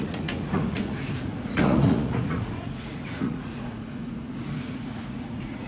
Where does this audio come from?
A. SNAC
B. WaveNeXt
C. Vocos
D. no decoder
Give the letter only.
C